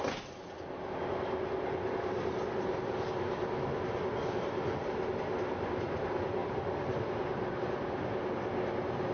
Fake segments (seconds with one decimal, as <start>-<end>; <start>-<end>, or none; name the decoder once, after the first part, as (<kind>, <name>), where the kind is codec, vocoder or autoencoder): none

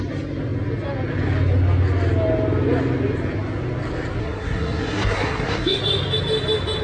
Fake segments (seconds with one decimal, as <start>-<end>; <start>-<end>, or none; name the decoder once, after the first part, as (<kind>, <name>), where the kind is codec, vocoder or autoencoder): 4.2-5.8 (codec, SNAC)